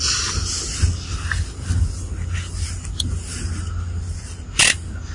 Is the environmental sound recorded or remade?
recorded